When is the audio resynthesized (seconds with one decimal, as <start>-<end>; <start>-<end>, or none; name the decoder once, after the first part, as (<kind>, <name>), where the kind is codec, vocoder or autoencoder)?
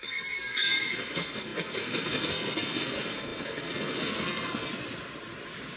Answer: 0.0-4.7 (codec, SNAC)